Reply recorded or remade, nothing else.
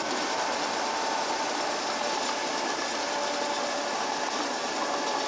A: recorded